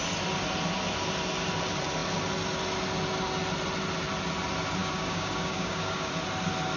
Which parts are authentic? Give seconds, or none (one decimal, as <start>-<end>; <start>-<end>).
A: 0.0-4.8; 6.1-6.8